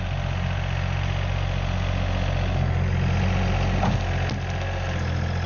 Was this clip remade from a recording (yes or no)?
no